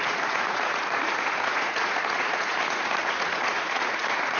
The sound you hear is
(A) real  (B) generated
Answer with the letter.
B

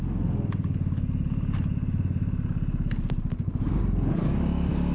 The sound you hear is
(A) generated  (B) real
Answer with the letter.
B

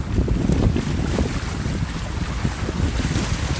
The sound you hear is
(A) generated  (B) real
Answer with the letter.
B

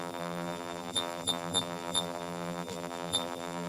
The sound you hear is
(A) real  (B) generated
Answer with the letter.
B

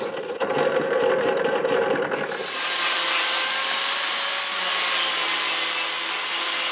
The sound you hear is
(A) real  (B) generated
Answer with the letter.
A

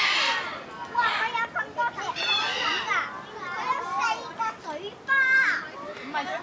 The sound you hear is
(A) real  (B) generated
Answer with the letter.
A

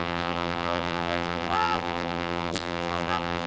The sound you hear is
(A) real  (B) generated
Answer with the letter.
B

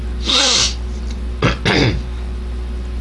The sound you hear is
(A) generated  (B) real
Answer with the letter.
B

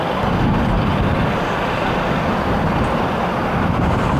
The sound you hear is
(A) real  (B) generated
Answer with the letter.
A